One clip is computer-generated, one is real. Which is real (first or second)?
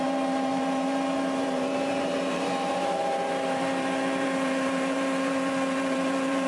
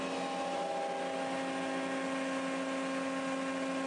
second